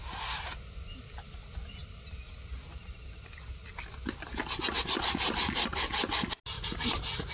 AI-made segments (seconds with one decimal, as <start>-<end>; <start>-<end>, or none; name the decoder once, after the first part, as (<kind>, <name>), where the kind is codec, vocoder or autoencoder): 5.7-6.4 (vocoder, BigVGAN v2)

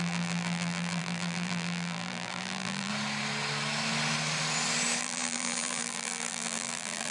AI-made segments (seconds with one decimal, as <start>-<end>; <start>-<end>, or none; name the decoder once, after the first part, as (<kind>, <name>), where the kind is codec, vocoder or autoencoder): 0.0-2.9 (vocoder, BigVGAN v2); 5.0-7.1

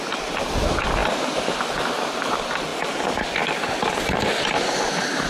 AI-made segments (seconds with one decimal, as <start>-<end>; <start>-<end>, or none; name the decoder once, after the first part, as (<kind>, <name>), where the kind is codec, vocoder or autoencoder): none

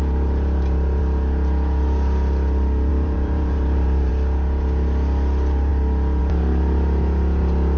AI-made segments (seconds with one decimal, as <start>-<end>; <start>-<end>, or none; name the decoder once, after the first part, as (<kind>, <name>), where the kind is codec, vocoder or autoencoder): 0.0-1.0 (vocoder, BigVGAN v2); 2.9-4.1

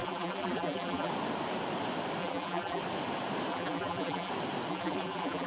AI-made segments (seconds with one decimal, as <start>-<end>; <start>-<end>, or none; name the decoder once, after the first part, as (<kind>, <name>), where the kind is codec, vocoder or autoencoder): 0.0-1.1 (vocoder, BigVGAN v2); 2.2-2.8; 3.5-4.3; 4.7-5.5

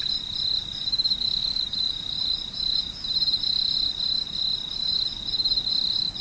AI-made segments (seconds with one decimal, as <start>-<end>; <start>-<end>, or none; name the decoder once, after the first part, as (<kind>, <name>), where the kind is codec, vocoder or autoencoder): 1.4-2.8 (vocoder, BigVGAN v2)